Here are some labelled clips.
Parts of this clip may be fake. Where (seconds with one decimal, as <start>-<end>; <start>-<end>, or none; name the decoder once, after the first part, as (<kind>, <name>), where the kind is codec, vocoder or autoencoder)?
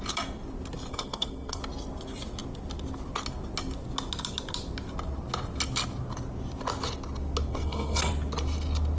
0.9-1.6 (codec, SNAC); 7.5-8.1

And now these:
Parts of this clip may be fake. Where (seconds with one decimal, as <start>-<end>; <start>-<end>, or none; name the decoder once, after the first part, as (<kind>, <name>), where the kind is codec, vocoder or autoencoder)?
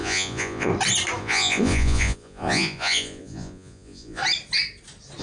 0.0-0.7 (vocoder, Vocos); 1.2-4.2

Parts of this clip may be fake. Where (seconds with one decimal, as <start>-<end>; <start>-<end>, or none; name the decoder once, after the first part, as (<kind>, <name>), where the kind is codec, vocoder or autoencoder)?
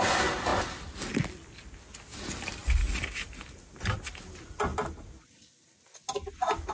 none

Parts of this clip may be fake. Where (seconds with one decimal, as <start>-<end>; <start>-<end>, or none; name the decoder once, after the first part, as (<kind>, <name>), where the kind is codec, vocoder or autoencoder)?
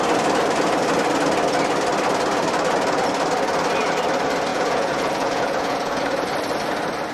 4.5-6.0 (vocoder, Vocos)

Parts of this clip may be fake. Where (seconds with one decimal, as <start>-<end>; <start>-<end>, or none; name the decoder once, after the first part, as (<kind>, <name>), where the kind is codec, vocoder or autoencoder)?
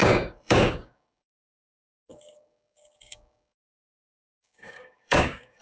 0.0-5.6 (codec, DAC)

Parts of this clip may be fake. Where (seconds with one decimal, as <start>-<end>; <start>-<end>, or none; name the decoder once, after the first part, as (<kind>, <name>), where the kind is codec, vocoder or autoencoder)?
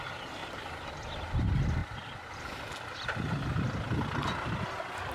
0.4-0.9 (vocoder, BigVGAN v2); 1.8-2.3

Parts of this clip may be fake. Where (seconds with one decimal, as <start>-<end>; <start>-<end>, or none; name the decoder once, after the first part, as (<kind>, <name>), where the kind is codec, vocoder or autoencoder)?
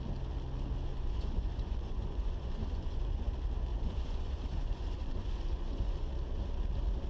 0.9-3.3 (vocoder, Vocos); 3.7-6.1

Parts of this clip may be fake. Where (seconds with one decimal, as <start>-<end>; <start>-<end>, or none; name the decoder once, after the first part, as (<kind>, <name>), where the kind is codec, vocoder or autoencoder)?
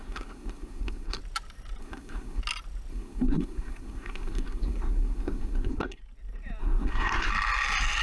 0.0-1.2 (codec, SNAC); 1.8-2.4; 2.9-6.0; 6.6-7.3